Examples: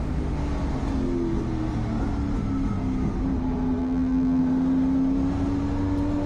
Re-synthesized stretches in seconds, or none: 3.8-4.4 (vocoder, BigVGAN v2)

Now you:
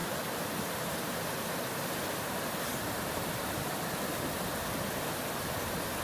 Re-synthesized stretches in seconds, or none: 0.0-3.6 (vocoder, BigVGAN v2)